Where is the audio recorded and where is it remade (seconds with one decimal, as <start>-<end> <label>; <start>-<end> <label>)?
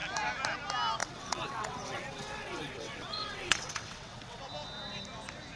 0.0-1.0 recorded; 1.0-4.4 remade; 4.4-5.6 recorded